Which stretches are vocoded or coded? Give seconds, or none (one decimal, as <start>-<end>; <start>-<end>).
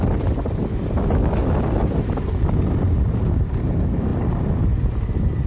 none